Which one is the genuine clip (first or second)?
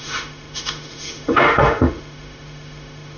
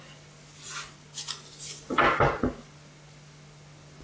second